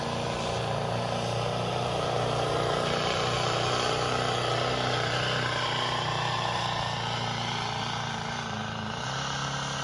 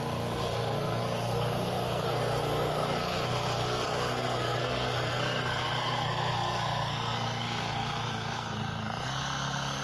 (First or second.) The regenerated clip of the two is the second